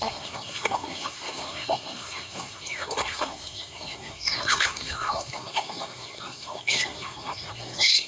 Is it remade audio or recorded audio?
remade